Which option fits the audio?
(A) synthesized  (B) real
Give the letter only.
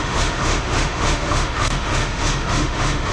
A